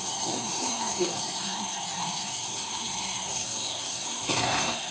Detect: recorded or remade remade